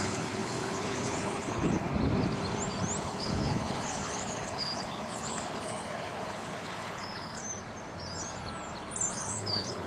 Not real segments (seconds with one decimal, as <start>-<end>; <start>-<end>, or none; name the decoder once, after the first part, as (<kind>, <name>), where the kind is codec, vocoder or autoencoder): 0.0-1.9 (codec, HILCodec); 3.0-7.4; 9.1-9.9